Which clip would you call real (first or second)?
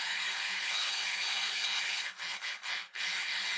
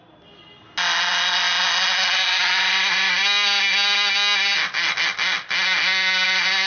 second